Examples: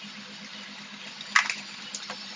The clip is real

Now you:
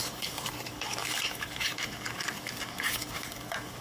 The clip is fake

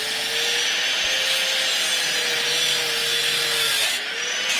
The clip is real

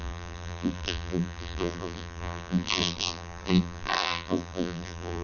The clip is fake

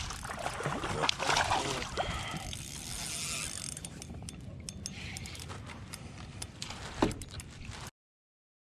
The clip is real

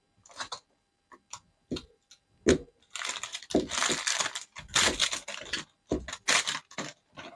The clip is real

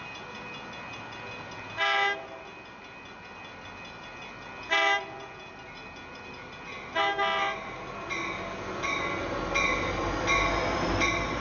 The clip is real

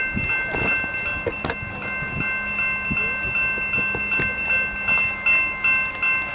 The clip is real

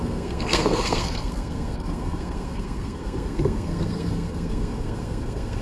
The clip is fake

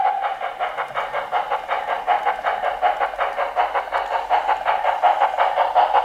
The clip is real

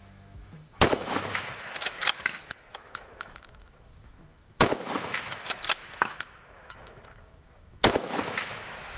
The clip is fake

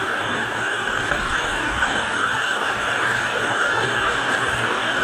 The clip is fake